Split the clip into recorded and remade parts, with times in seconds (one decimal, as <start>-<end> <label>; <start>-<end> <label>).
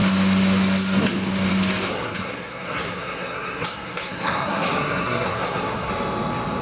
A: 0.0-1.9 recorded; 1.9-5.9 remade; 5.9-6.6 recorded